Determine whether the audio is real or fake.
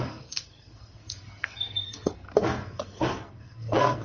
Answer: fake